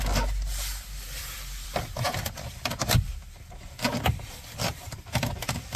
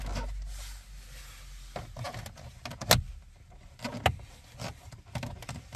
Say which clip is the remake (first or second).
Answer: first